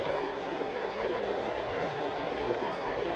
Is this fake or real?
fake